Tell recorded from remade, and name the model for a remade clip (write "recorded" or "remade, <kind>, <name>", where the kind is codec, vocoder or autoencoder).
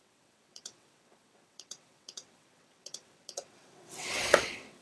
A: remade, vocoder, WaveNeXt